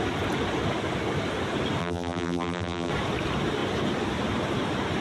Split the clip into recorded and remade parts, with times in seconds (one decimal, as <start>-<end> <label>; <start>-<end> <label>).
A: 0.0-1.8 recorded; 1.8-2.9 remade; 2.9-5.0 recorded